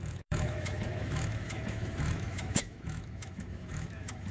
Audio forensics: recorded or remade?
remade